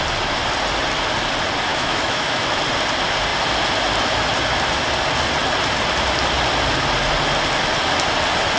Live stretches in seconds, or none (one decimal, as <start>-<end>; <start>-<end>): 0.0-1.7; 2.6-8.6